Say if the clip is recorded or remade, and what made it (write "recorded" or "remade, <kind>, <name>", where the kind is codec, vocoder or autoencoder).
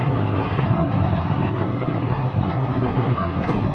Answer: remade, codec, SNAC